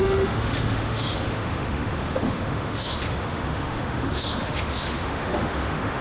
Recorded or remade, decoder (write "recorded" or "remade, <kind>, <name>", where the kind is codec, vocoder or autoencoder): remade, autoencoder, DAC-VAE